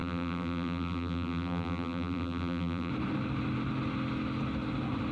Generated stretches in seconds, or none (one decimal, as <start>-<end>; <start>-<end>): 0.0-2.9

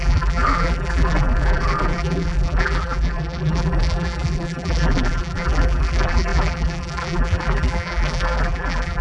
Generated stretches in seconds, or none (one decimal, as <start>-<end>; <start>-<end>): 0.0-9.0

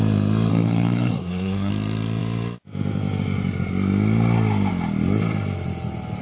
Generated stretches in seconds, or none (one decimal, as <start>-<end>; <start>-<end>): 0.5-1.7

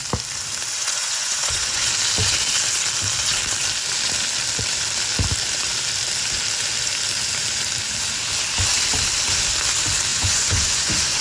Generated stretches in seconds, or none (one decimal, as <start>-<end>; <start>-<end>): 0.8-1.9; 10.1-11.2